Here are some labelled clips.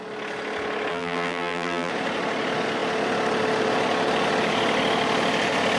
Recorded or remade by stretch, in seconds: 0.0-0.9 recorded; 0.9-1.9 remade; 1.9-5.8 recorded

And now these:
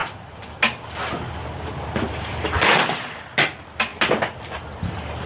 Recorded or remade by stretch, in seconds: 0.0-5.3 recorded

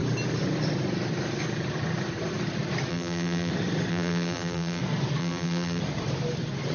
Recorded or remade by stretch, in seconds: 0.0-2.9 recorded; 2.9-3.5 remade; 3.5-3.9 recorded; 3.9-4.8 remade; 4.8-5.2 recorded; 5.2-5.8 remade; 5.8-6.7 recorded

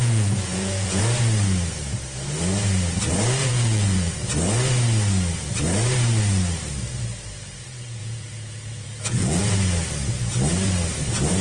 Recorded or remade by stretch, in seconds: 0.0-1.0 remade; 1.0-3.4 recorded; 3.4-4.1 remade; 4.1-8.0 recorded; 8.0-9.4 remade; 9.4-11.4 recorded